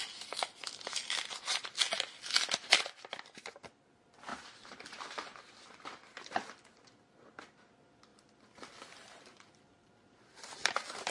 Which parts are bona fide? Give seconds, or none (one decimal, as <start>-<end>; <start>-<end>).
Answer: 0.0-4.3; 7.4-8.1; 10.7-11.1